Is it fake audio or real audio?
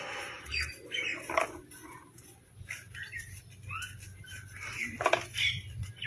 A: real